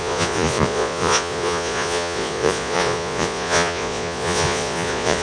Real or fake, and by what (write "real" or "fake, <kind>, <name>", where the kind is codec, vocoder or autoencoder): fake, vocoder, Vocos